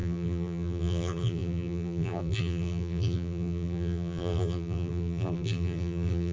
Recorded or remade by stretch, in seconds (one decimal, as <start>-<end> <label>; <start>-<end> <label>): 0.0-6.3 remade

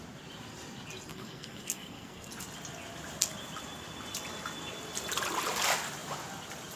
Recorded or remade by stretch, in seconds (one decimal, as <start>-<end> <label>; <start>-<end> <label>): 0.0-1.1 recorded; 1.1-2.3 remade; 2.3-6.8 recorded

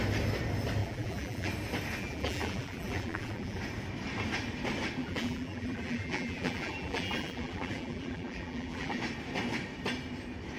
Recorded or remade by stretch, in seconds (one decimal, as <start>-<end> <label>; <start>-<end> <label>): 0.0-0.8 recorded; 0.8-1.5 remade; 1.5-2.0 recorded; 2.0-3.6 remade; 3.6-5.0 recorded; 5.0-9.0 remade; 9.0-10.6 recorded

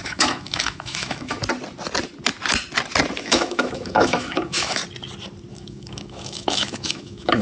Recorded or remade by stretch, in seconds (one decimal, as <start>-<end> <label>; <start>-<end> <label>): 0.0-1.4 remade; 1.4-3.2 recorded; 3.2-4.8 remade; 4.8-5.5 recorded; 5.5-7.4 remade

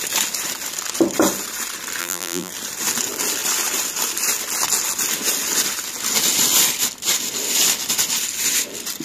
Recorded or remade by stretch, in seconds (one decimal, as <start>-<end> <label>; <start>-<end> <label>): 0.0-2.0 recorded; 2.0-2.5 remade; 2.5-9.0 recorded

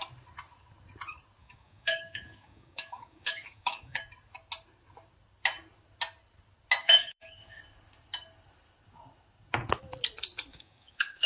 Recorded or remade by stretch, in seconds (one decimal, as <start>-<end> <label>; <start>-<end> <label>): 0.0-1.4 recorded; 1.4-4.0 remade; 4.0-6.8 recorded; 6.8-7.6 remade; 7.6-10.5 recorded; 10.5-11.3 remade

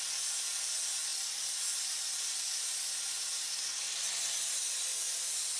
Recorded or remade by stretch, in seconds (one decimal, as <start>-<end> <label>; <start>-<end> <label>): 0.0-5.6 recorded